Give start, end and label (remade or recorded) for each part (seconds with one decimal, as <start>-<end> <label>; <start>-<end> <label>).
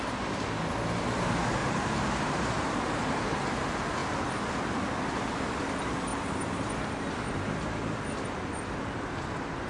0.0-1.6 recorded; 1.6-3.3 remade; 3.3-6.1 recorded; 6.1-6.7 remade; 6.7-9.7 recorded